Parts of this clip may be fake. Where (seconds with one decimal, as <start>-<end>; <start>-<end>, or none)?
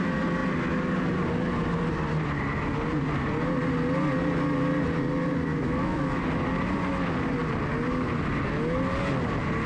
5.5-6.2